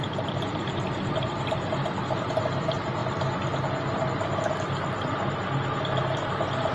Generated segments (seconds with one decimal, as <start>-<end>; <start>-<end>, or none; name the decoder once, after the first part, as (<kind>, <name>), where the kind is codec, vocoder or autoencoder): none